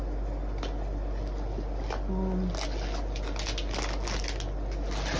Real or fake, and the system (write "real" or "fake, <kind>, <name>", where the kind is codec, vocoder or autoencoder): real